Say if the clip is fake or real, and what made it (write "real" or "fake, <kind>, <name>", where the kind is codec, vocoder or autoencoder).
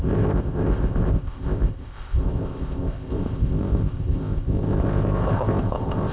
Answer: fake, codec, ZipCodec